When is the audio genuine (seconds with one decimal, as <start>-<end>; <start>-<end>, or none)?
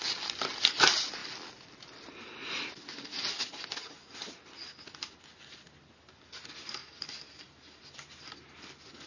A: 0.0-6.8; 7.8-9.1